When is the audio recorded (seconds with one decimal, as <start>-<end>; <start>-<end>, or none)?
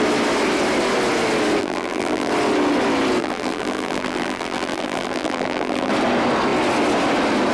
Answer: 0.0-1.6; 2.3-3.2; 5.9-7.5